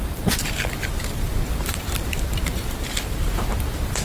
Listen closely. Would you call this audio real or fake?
fake